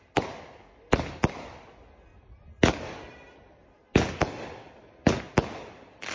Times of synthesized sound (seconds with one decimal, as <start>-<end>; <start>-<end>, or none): none